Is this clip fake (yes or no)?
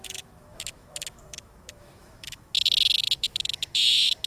yes